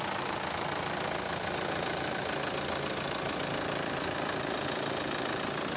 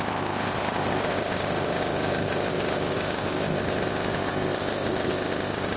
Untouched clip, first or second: first